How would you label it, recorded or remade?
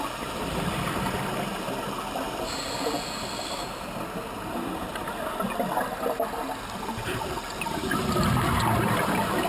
recorded